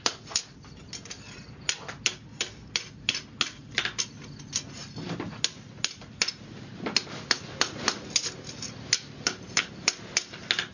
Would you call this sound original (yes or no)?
yes